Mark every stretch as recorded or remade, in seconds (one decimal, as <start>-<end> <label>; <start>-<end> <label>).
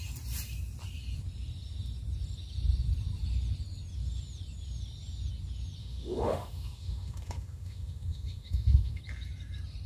0.0-5.8 recorded; 5.8-9.0 remade; 9.0-9.9 recorded